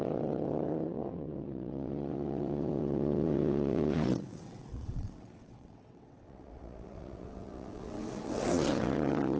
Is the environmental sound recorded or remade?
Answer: remade